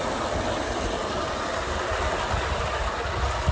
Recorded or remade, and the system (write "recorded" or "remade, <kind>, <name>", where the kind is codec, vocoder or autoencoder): recorded